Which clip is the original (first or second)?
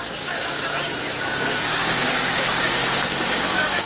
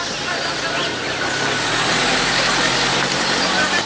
second